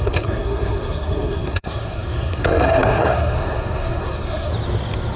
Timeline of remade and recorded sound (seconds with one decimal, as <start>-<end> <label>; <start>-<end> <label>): 0.0-4.5 remade; 4.5-5.2 recorded